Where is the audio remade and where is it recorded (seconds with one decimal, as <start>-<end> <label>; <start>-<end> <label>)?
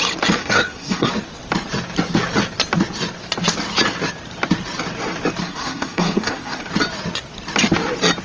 0.0-0.4 recorded; 0.4-1.1 remade; 1.1-5.4 recorded; 5.4-6.7 remade; 6.7-8.2 recorded